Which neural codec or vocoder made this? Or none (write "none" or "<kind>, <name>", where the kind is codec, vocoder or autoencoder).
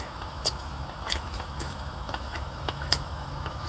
autoencoder, DAC-VAE